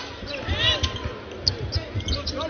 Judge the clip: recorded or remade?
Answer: recorded